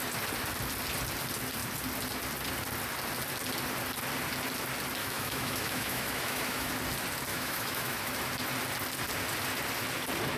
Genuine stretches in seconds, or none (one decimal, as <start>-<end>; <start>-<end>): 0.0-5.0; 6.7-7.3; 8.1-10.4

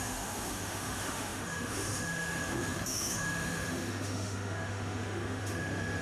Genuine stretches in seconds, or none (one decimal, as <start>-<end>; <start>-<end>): none

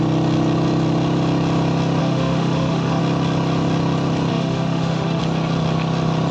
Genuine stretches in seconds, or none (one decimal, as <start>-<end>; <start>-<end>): 0.0-2.0; 3.0-4.3; 5.2-6.3